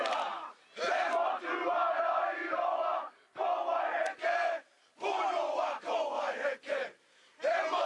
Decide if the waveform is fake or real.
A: fake